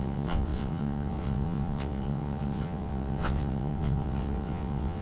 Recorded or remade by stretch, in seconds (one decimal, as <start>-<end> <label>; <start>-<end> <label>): 0.0-5.0 remade